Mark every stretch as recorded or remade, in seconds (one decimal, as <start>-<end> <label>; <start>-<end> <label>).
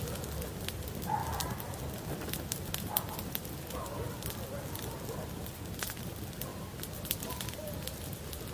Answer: 0.0-8.5 recorded